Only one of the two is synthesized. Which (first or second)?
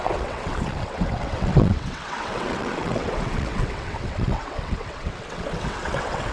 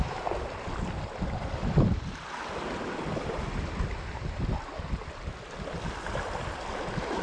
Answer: first